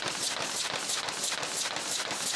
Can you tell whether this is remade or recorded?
recorded